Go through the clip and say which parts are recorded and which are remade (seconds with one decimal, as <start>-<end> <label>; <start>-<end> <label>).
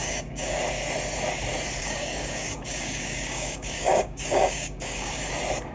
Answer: 0.0-0.6 remade; 0.6-1.8 recorded; 1.8-5.2 remade; 5.2-5.7 recorded